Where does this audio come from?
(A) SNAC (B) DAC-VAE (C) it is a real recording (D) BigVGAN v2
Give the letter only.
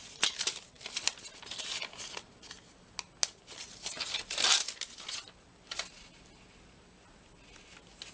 C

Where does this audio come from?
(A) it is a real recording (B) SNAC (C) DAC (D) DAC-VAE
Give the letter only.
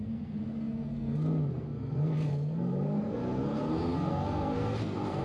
B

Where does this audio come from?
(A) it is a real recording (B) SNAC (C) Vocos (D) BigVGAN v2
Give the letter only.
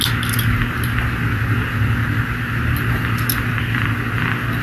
A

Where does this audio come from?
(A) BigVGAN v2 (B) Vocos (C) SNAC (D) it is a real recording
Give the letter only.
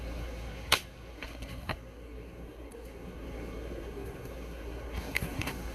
C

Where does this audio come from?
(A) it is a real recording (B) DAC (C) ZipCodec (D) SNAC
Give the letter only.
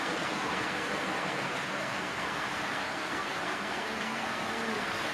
D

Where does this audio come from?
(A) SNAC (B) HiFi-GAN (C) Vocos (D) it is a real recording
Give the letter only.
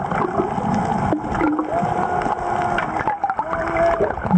D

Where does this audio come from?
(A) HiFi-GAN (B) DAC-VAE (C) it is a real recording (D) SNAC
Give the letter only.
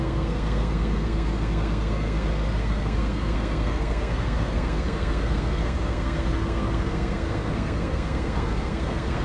D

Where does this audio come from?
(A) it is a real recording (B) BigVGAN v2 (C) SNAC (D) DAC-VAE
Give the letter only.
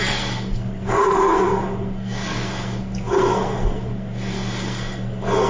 C